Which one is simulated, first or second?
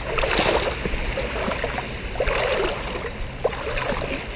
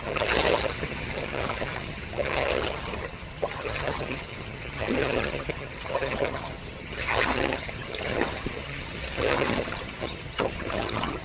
second